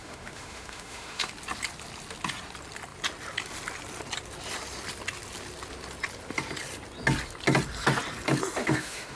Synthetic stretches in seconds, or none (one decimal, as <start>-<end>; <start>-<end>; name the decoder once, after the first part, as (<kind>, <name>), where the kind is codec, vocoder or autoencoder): 0.0-1.3 (autoencoder, DAC-VAE); 8.6-9.2

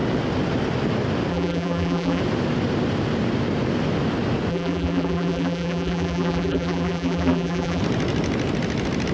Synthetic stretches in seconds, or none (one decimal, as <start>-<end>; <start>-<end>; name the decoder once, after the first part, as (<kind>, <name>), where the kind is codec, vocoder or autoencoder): 1.3-2.2 (vocoder, BigVGAN v2); 4.5-7.8

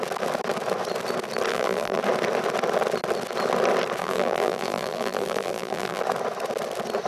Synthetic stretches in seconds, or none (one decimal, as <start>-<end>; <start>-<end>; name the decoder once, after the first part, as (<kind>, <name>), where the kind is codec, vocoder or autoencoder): 1.5-2.0 (vocoder, BigVGAN v2); 4.0-6.0

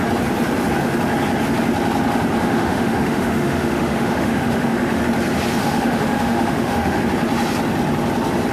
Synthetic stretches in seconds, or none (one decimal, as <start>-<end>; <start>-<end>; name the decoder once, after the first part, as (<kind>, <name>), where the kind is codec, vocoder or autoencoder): 2.4-5.0 (autoencoder, DAC-VAE); 5.6-7.0

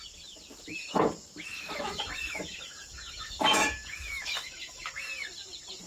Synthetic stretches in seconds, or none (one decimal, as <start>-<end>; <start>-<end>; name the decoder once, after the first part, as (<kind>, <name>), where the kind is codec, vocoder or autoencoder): 1.5-5.0 (autoencoder, DAC-VAE)

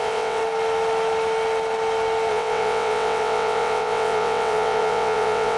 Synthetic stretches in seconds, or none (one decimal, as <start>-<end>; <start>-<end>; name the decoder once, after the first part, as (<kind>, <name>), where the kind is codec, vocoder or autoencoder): 0.0-0.4 (vocoder, WaveNeXt); 2.3-5.6